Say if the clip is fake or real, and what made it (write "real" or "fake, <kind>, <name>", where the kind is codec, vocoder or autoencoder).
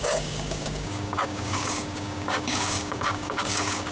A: fake, codec, DAC